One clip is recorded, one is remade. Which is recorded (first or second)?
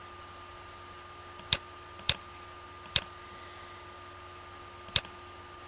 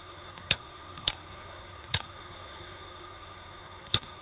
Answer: first